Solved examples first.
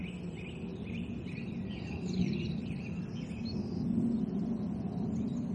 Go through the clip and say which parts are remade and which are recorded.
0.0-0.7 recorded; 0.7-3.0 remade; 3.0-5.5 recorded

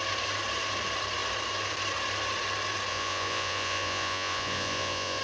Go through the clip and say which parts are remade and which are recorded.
0.0-2.9 recorded; 2.9-5.2 remade

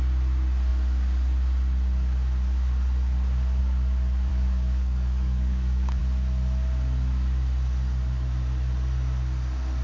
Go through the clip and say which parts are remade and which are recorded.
0.0-4.3 recorded; 4.3-6.0 remade; 6.0-9.8 recorded

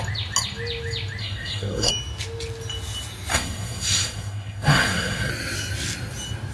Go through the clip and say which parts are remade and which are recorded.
0.0-1.2 recorded; 1.2-1.9 remade; 1.9-3.3 recorded; 3.3-5.3 remade; 5.3-6.5 recorded